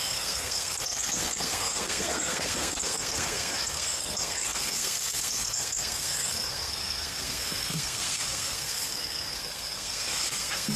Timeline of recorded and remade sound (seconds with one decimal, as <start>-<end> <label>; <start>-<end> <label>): 0.0-10.8 remade